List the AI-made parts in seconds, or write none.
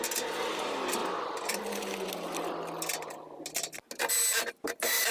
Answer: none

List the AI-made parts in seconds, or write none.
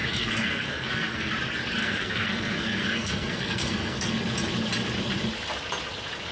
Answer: 0.0-1.3 (codec, SNAC); 1.8-4.1